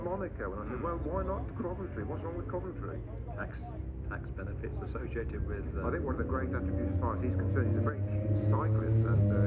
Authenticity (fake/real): real